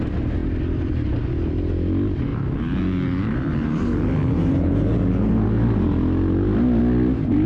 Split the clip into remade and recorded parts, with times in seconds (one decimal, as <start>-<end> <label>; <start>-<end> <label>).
0.0-7.5 recorded